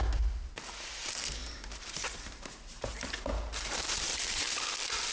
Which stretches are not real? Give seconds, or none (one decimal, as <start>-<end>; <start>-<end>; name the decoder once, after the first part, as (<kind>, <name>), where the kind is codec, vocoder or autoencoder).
1.4-4.5 (vocoder, BigVGAN v2)